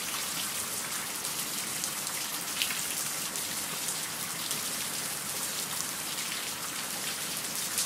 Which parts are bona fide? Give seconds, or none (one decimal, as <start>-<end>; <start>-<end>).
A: 0.0-7.9